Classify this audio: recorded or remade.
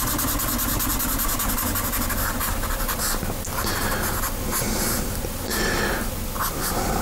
recorded